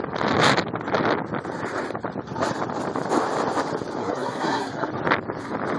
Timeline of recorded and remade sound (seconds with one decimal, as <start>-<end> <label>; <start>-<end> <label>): 0.0-4.0 recorded; 4.0-4.9 remade; 4.9-5.8 recorded